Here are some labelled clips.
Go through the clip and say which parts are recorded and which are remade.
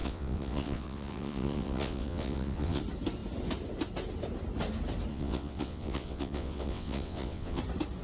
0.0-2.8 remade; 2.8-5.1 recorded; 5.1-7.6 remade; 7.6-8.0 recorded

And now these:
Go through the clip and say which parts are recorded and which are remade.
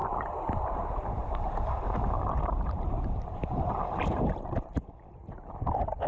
0.0-0.5 remade; 0.5-1.2 recorded; 1.2-4.9 remade; 4.9-6.1 recorded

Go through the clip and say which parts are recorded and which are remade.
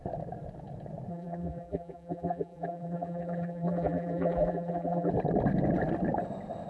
0.0-1.1 recorded; 1.1-5.1 remade; 5.1-6.7 recorded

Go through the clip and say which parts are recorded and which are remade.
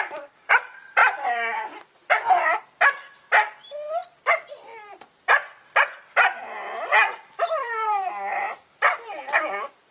0.0-1.0 recorded; 1.0-2.4 remade; 2.4-6.9 recorded; 6.9-9.2 remade; 9.2-9.9 recorded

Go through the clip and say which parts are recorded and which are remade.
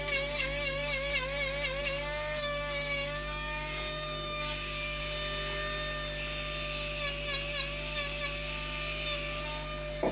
0.0-1.1 remade; 1.1-1.8 recorded; 1.8-5.0 remade; 5.0-10.1 recorded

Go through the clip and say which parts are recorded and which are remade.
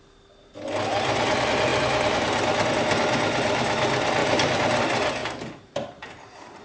0.0-4.2 recorded; 4.2-4.8 remade; 4.8-5.2 recorded; 5.2-6.6 remade